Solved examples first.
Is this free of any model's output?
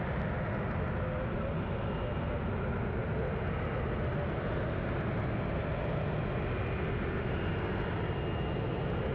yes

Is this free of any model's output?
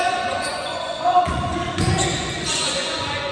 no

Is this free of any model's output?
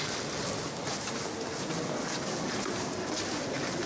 yes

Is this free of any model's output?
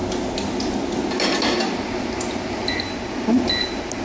yes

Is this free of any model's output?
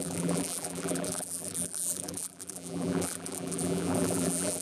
no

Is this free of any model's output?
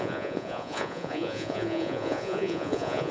no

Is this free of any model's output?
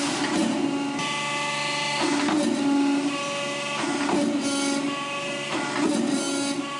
yes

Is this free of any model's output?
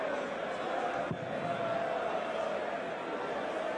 yes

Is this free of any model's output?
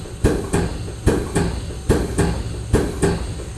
yes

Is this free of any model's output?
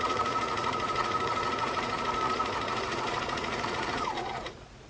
no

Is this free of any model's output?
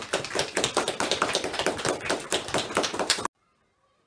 yes